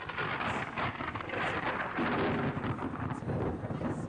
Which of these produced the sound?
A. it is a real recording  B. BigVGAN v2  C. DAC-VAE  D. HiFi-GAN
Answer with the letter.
A